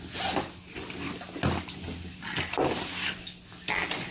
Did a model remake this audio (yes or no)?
no